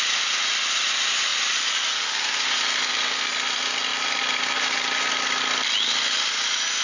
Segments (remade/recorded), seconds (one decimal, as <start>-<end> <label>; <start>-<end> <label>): 0.0-6.8 recorded